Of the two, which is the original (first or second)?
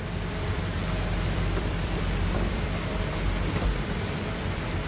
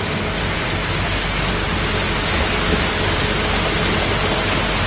second